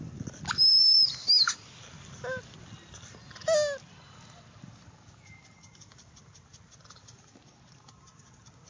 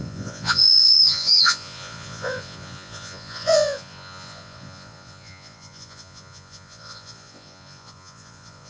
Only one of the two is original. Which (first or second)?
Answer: first